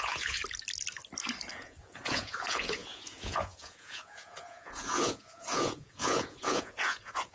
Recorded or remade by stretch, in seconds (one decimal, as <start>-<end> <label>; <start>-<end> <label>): 0.0-0.4 remade; 0.4-1.5 recorded; 1.5-7.3 remade